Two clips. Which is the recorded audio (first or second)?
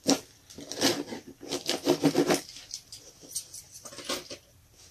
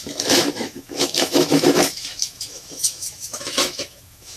first